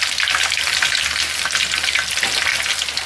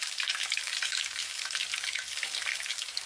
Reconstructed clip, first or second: second